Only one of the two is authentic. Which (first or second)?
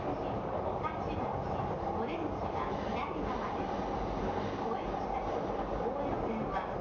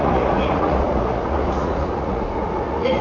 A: first